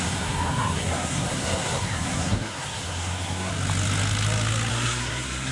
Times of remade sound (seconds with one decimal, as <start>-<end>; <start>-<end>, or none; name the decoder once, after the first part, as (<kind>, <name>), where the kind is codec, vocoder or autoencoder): 0.0-3.5 (codec, SNAC); 4.7-5.5